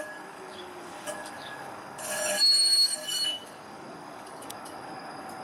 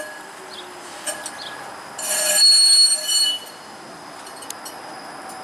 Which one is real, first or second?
second